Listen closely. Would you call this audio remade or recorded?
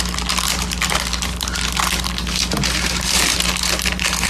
recorded